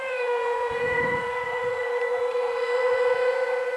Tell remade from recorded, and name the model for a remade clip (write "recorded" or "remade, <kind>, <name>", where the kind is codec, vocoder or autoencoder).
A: remade, vocoder, Vocos